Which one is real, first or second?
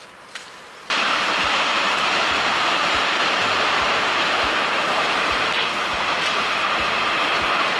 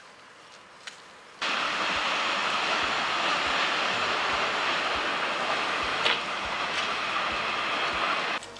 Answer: second